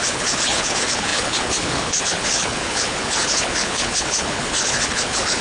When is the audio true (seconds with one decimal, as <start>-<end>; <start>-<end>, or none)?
none